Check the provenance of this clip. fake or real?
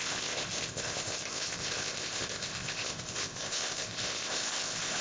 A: fake